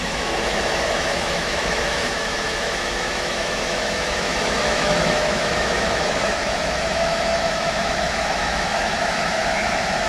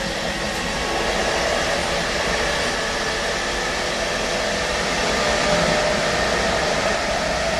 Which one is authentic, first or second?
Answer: second